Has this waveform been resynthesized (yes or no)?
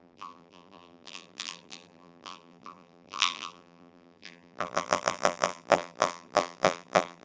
yes